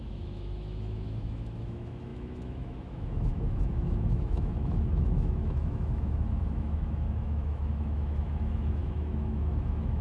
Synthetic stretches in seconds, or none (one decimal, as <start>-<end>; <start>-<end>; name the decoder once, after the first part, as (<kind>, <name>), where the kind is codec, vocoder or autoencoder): 0.0-10.0 (autoencoder, DAC-VAE)